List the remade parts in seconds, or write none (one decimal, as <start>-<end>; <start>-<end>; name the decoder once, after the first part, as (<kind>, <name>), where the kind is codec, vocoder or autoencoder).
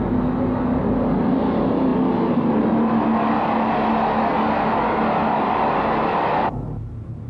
none